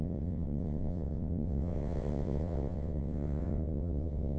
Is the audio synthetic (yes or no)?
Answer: yes